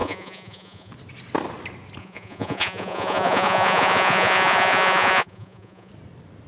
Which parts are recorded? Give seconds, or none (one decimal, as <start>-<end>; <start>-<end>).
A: 0.9-2.0; 5.9-6.5

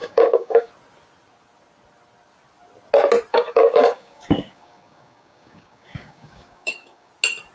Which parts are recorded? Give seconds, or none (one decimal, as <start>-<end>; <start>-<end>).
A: 0.7-3.3; 7.1-7.5

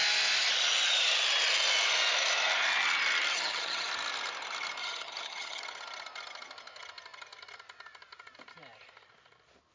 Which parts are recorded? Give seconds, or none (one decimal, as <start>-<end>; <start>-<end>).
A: 0.0-3.3; 3.9-4.8; 5.6-9.7